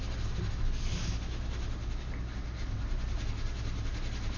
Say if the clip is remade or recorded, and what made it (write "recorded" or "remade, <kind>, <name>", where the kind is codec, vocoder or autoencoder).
recorded